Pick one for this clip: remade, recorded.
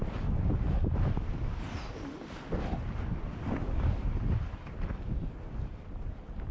recorded